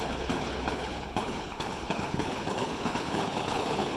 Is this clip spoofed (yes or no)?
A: yes